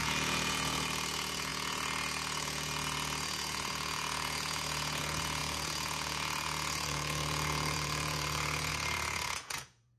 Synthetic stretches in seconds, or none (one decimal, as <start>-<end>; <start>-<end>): 0.0-10.0